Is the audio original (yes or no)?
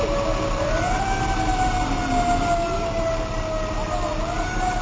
yes